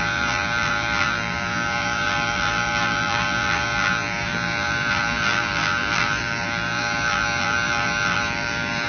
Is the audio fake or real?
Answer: fake